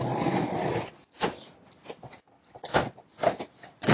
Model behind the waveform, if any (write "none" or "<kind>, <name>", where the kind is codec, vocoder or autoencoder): none